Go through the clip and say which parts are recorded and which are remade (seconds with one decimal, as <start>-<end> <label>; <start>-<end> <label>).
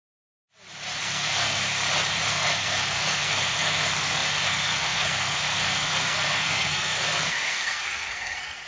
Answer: 0.0-0.4 remade; 0.4-1.0 recorded; 1.0-1.8 remade; 1.8-2.3 recorded; 2.3-8.7 remade